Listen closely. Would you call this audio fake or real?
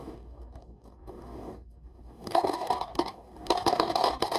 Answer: fake